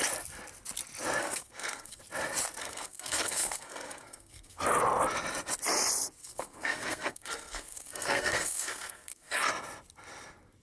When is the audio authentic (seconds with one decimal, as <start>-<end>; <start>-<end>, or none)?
0.0-1.2; 2.0-2.6; 4.6-6.2; 9.5-10.6